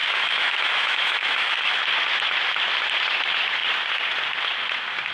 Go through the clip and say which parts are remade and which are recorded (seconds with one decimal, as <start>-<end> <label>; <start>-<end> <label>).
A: 0.0-1.8 remade; 1.8-5.1 recorded